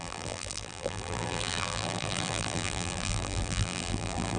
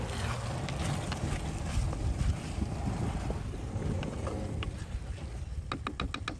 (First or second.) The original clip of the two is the second